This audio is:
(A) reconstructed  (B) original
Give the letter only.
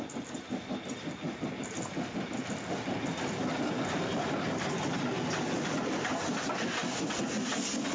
B